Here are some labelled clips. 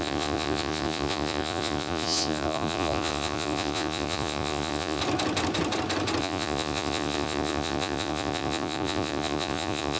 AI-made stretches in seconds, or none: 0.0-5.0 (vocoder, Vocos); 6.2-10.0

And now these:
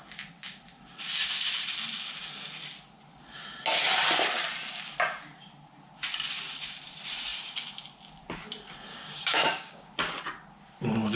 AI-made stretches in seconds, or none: 8.9-9.9 (codec, DAC)